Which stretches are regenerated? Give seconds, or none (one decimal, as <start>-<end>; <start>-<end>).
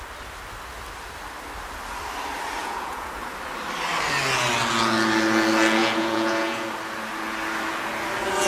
2.6-3.1; 5.8-6.7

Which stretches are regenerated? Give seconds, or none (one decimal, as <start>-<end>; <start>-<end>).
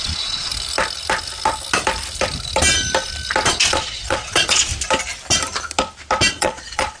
0.0-0.5; 3.5-4.7; 6.3-7.0